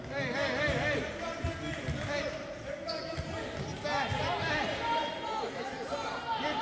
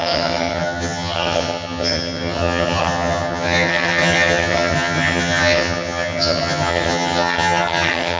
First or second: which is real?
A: first